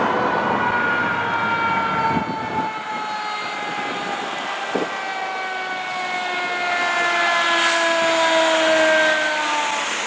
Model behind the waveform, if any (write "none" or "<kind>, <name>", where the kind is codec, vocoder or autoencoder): none